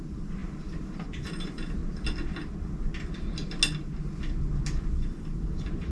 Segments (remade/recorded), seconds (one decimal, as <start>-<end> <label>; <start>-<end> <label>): 0.0-0.4 remade; 0.4-0.9 recorded; 0.9-1.8 remade; 1.8-4.9 recorded; 4.9-5.9 remade